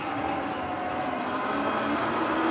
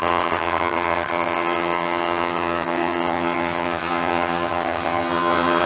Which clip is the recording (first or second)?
first